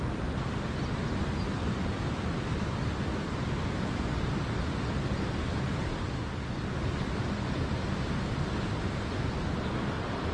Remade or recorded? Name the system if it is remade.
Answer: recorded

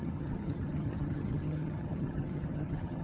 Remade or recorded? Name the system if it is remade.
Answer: remade, vocoder, HiFi-GAN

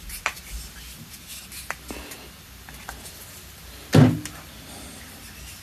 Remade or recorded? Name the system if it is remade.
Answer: recorded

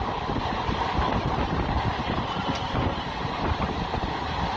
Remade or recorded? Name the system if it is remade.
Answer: recorded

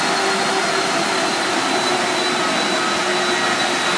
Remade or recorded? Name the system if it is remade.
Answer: recorded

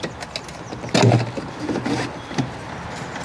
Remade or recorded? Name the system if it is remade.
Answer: recorded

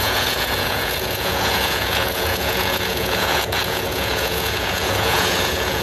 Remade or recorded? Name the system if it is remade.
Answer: remade, vocoder, Vocos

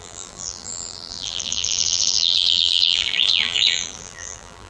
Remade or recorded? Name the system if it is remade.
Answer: remade, vocoder, BigVGAN v2